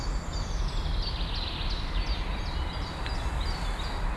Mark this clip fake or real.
real